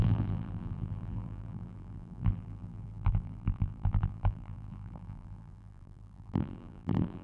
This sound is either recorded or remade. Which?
remade